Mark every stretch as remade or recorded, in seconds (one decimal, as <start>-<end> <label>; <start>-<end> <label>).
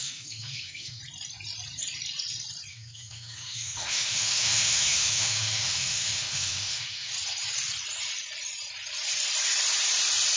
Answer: 0.0-1.0 remade; 1.0-2.7 recorded; 2.7-7.1 remade; 7.1-10.4 recorded